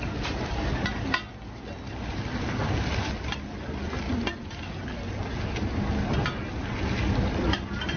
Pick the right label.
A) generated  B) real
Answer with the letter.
B